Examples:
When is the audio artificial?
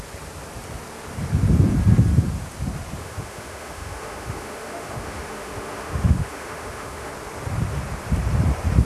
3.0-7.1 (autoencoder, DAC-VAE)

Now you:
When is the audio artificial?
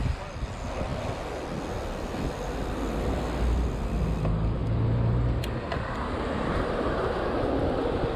none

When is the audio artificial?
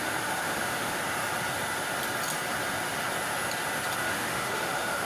0.0-1.0 (autoencoder, DAC-VAE); 4.0-5.0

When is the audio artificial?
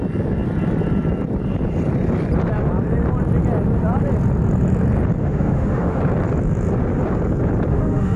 5.2-6.0 (autoencoder, DAC-VAE); 7.7-8.2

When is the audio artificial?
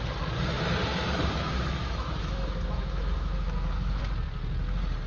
0.9-4.0 (autoencoder, DAC-VAE)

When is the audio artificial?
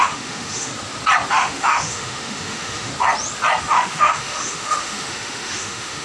0.0-0.7 (autoencoder, DAC-VAE); 1.3-2.9; 3.6-6.0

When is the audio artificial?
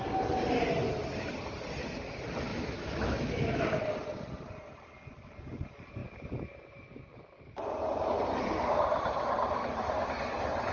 2.5-3.6 (autoencoder, DAC-VAE)